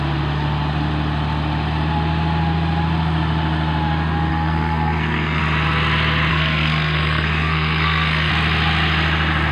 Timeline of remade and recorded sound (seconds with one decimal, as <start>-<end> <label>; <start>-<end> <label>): 0.0-4.3 recorded; 4.3-5.4 remade; 5.4-6.3 recorded; 6.3-8.3 remade; 8.3-9.5 recorded